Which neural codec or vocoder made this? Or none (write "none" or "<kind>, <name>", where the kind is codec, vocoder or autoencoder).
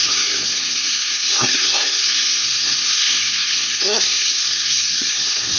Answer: codec, SNAC